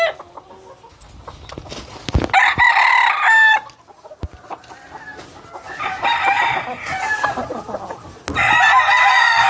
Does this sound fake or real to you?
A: real